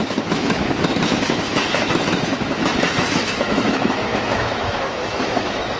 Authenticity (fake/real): fake